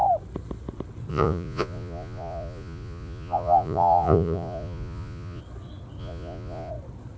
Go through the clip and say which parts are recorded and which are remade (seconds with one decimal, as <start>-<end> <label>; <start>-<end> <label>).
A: 0.0-1.1 recorded; 1.1-5.4 remade; 5.4-6.0 recorded; 6.0-6.7 remade; 6.7-7.2 recorded